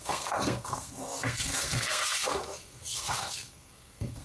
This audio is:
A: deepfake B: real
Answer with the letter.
A